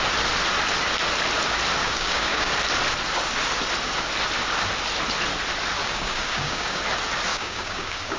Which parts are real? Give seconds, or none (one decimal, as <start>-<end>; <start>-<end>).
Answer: 0.0-1.8; 2.5-5.8; 6.8-7.3

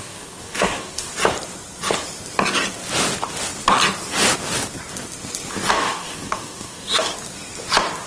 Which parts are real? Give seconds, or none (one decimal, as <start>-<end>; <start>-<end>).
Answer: 1.1-5.7; 7.1-8.1

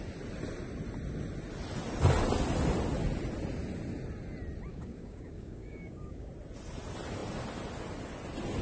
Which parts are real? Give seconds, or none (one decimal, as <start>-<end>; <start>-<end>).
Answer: 0.0-4.7; 6.3-8.6

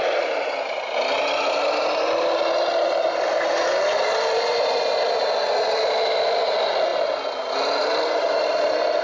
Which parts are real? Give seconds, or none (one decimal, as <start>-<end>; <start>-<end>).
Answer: 0.0-9.0

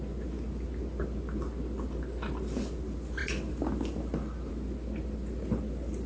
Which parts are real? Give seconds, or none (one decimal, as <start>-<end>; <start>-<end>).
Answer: 0.0-6.1

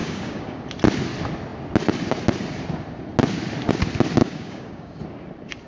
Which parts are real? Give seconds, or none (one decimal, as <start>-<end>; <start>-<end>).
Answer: 0.6-4.2; 5.0-5.7

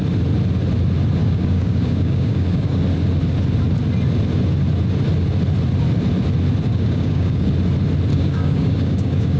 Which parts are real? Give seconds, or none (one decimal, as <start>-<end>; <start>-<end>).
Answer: 0.0-1.2; 2.8-6.7; 7.5-8.1